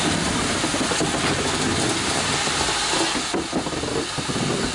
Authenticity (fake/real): real